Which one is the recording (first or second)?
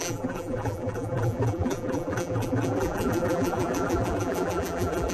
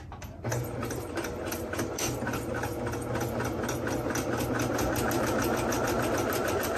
second